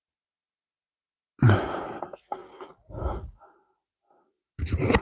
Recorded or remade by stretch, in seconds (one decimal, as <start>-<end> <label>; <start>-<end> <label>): 0.0-5.0 recorded